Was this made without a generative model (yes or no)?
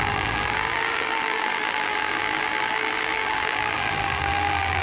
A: no